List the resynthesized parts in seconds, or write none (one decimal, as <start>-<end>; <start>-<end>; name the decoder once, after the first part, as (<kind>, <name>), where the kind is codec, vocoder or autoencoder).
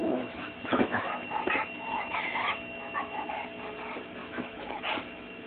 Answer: 0.0-3.3 (autoencoder, DAC-VAE); 4.2-4.8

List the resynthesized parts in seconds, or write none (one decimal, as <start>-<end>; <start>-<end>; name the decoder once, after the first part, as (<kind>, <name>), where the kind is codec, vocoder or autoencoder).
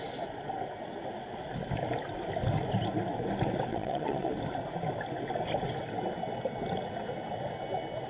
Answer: 3.7-4.3 (vocoder, WaveNeXt)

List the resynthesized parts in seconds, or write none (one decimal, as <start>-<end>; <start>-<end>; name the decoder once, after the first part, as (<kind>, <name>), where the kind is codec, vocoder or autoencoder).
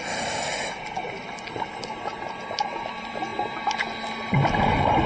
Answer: none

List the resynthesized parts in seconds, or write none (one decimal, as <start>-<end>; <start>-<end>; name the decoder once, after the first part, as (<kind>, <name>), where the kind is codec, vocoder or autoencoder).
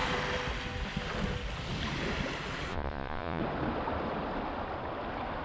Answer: 2.7-3.4 (vocoder, Vocos)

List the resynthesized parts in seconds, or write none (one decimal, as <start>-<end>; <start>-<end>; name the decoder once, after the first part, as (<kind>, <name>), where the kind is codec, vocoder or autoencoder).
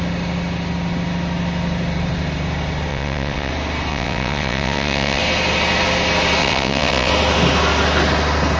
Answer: 2.9-3.5 (vocoder, WaveNeXt); 3.9-5.2; 6.4-7.1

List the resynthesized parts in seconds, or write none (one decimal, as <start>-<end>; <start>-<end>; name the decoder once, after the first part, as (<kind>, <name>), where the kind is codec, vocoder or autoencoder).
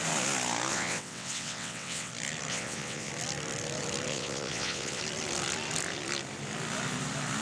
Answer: 0.7-2.1 (vocoder, WaveNeXt); 2.5-3.1; 4.1-5.0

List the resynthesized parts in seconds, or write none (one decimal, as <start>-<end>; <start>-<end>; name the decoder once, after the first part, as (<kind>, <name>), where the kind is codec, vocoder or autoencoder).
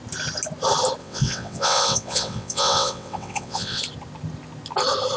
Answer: 1.0-3.8 (vocoder, WaveNeXt)